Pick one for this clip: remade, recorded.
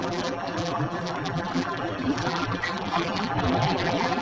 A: remade